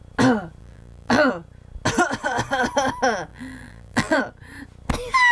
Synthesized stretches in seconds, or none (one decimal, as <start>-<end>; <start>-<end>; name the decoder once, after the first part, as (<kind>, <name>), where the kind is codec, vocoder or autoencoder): 0.6-1.3 (vocoder, BigVGAN v2); 3.3-4.2